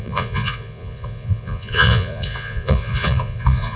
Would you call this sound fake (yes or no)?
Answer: yes